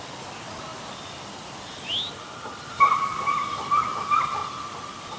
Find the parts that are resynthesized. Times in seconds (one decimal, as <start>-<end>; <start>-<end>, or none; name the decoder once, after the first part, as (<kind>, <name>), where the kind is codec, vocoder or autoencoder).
none